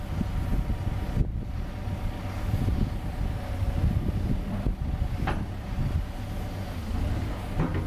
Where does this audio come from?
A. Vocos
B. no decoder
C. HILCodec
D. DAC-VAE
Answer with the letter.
B